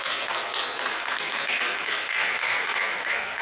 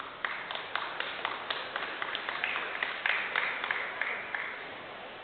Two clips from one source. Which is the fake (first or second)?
first